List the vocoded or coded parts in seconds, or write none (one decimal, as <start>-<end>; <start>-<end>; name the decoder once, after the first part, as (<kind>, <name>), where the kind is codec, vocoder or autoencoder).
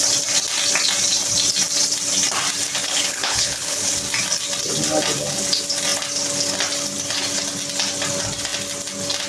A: 2.8-3.9 (codec, HILCodec)